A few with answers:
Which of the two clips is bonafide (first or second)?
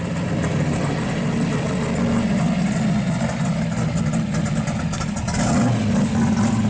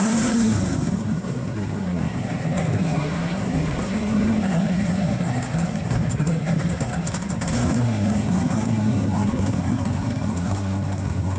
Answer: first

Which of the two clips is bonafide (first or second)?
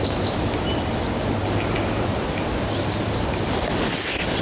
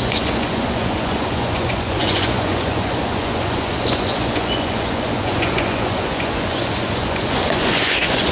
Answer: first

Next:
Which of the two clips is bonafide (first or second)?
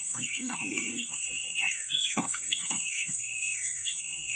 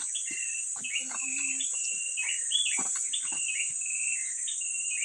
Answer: second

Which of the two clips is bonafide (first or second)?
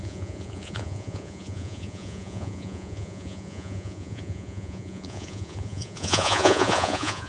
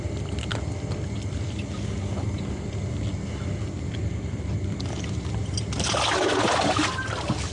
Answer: second